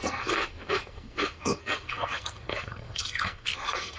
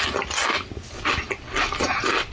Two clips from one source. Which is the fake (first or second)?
first